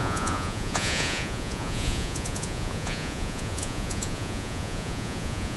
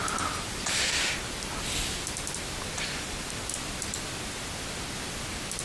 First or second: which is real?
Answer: second